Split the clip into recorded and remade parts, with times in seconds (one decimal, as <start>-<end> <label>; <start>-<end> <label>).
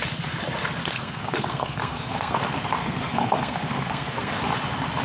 0.0-0.8 recorded; 0.8-2.4 remade; 2.4-2.8 recorded; 2.8-4.4 remade; 4.4-5.0 recorded